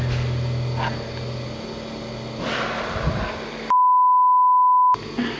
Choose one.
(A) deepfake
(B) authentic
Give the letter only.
B